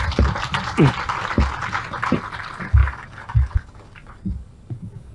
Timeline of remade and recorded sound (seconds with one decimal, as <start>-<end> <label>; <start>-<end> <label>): 0.0-2.8 recorded; 2.8-5.1 remade